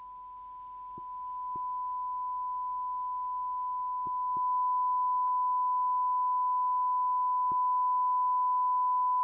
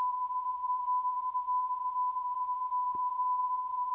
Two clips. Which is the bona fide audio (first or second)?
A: first